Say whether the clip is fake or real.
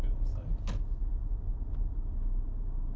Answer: real